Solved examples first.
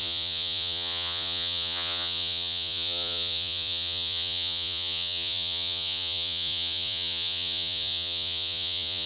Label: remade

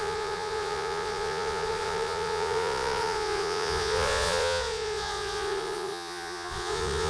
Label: remade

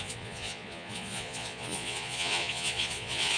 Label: remade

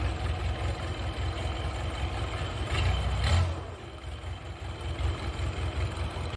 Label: recorded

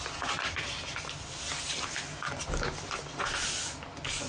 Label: recorded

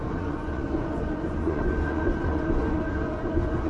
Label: remade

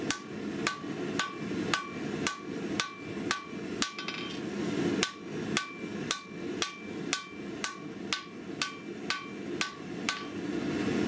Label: recorded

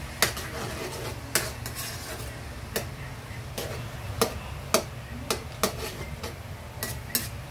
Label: recorded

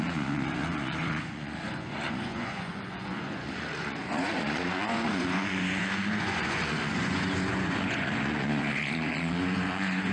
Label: remade